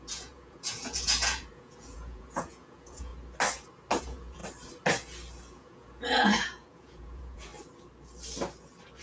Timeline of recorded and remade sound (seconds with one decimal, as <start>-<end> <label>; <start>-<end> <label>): 0.0-3.1 remade; 3.1-4.0 recorded; 4.0-4.4 remade; 4.4-5.5 recorded; 5.5-7.5 remade; 7.5-9.0 recorded